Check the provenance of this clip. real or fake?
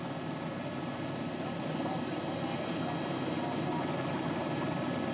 real